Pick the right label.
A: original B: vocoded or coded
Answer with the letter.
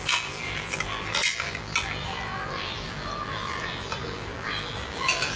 B